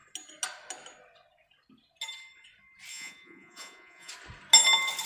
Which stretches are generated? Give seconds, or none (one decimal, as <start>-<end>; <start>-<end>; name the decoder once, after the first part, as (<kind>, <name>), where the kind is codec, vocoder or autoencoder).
2.9-4.1 (vocoder, Vocos)